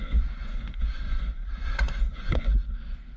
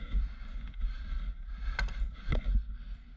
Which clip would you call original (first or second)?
second